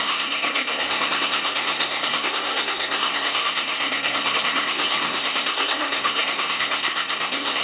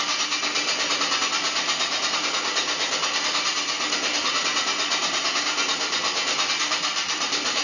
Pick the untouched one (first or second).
second